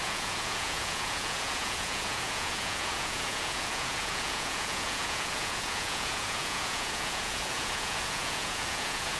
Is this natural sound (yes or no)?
no